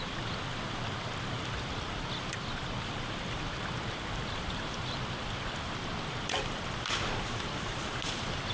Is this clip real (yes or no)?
no